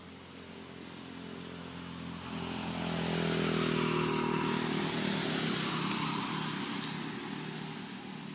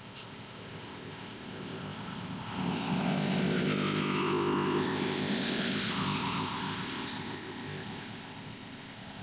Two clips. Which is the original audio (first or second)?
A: first